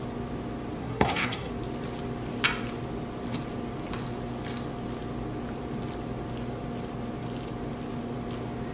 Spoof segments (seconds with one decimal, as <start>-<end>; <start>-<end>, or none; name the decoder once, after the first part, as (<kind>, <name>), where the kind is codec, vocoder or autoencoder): 0.8-1.5 (codec, SNAC)